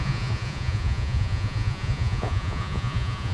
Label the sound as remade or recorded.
remade